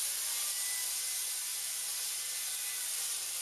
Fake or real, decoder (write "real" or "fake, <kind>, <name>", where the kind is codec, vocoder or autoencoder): real